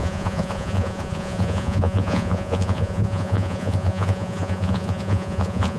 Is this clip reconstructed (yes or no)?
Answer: yes